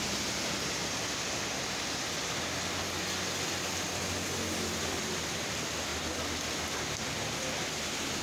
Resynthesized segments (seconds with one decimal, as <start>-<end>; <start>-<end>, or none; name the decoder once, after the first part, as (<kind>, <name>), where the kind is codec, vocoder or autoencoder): none